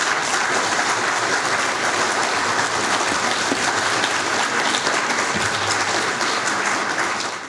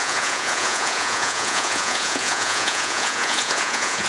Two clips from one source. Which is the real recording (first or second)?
first